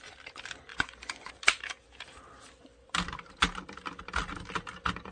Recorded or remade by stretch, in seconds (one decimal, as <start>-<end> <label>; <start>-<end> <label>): 0.0-0.7 recorded; 0.7-1.3 remade; 1.3-5.1 recorded